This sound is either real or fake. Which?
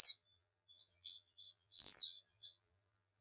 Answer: fake